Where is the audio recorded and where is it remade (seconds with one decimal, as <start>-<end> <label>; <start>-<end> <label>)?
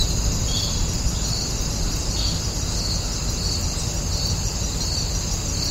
0.0-5.7 recorded